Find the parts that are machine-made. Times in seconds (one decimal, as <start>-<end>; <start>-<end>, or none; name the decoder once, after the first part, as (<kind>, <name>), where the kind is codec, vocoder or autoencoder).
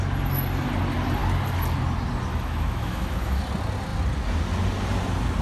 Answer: 2.3-3.4 (autoencoder, DAC-VAE)